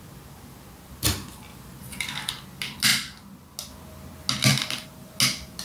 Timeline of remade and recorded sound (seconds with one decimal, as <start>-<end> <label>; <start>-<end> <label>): 0.0-1.5 recorded; 1.5-2.3 remade; 2.3-4.5 recorded; 4.5-5.1 remade; 5.1-5.6 recorded